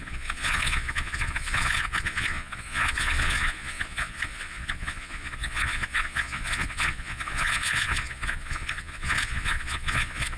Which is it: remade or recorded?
remade